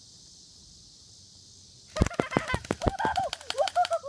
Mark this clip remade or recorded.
recorded